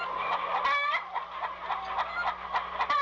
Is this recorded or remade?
recorded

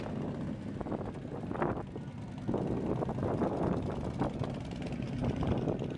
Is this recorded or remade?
recorded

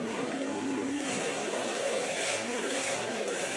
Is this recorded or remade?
remade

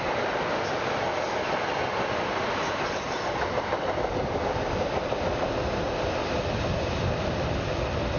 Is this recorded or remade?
recorded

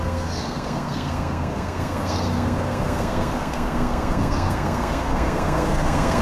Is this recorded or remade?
remade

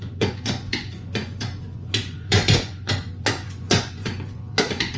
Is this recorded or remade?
remade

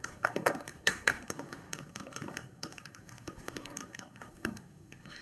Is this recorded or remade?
remade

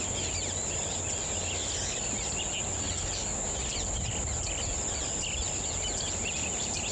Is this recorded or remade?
recorded